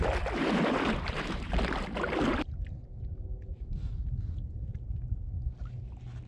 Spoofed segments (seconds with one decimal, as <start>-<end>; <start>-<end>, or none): 0.4-1.6

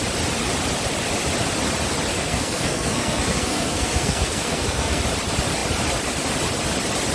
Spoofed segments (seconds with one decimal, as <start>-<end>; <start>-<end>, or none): 2.1-5.0

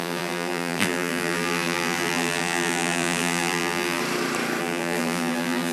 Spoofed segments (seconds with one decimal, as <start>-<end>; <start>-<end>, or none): 0.0-4.0; 4.6-5.7

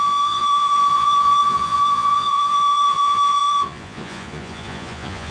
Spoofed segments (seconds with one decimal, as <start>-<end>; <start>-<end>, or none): 0.0-5.3

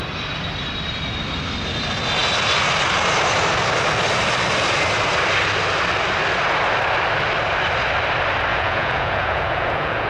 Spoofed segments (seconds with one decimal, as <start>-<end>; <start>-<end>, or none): 8.5-10.1

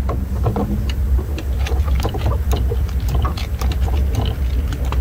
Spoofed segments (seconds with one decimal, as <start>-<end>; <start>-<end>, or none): 1.0-4.0